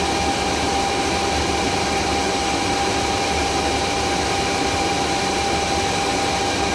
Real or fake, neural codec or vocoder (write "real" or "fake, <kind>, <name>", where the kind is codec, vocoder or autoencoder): real